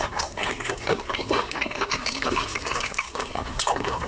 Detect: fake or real fake